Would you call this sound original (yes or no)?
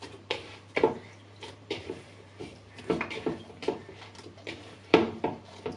no